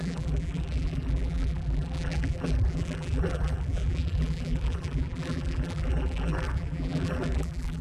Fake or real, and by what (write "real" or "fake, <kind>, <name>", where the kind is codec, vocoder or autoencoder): fake, vocoder, BigVGAN v2